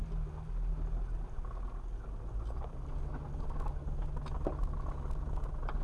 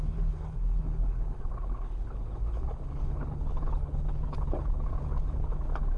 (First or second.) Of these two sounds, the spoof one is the second